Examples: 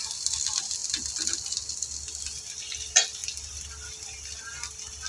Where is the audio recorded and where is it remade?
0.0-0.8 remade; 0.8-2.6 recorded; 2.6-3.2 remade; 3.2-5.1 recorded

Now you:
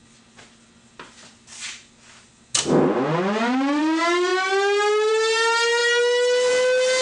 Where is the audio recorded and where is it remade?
0.0-7.0 recorded